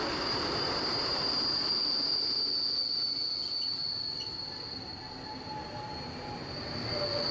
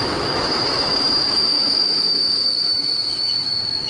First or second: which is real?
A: first